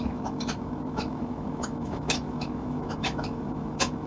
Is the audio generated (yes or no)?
yes